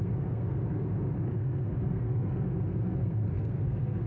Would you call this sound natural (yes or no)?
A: no